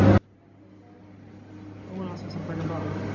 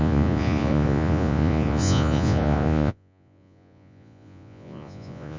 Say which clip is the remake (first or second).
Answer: second